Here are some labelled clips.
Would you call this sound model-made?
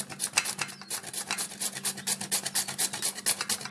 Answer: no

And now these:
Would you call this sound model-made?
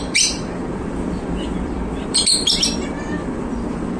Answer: yes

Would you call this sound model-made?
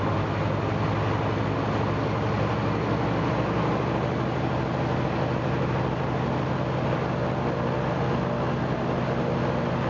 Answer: no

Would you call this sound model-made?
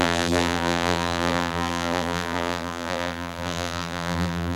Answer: yes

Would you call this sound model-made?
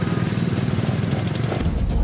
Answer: no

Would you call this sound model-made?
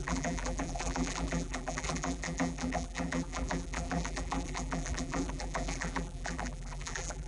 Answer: yes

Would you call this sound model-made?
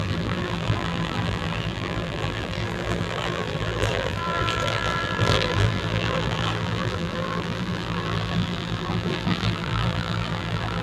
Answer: yes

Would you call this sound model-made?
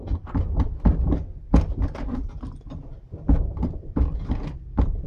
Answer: no